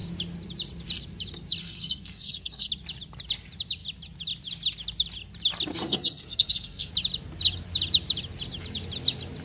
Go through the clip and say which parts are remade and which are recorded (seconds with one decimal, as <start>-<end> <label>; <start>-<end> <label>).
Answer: 0.0-1.6 recorded; 1.6-2.7 remade; 2.7-5.7 recorded; 5.7-6.9 remade; 6.9-9.4 recorded